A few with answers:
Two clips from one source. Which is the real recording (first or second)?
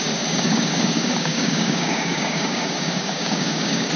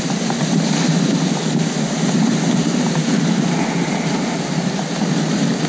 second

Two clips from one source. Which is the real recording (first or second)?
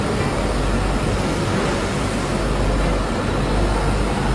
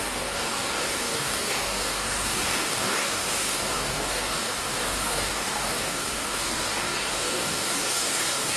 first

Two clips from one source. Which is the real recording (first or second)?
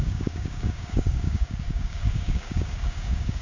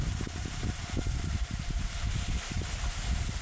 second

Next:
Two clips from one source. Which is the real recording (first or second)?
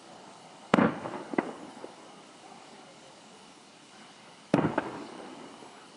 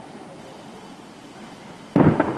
second